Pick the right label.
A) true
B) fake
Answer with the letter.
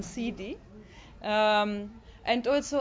A